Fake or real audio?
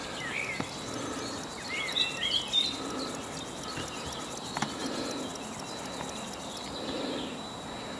real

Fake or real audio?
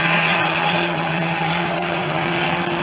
fake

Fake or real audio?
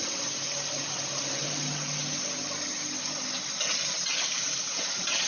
real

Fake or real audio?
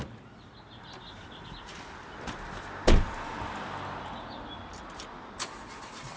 real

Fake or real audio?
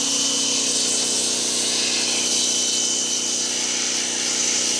real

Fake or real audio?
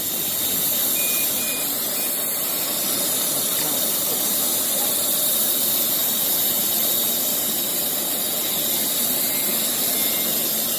real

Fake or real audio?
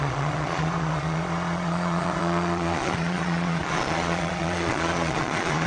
fake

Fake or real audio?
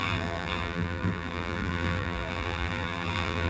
fake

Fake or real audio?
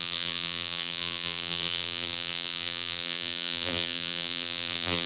fake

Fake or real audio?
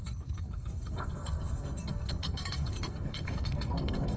fake